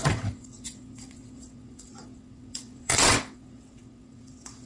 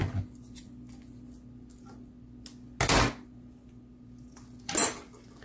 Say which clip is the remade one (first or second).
first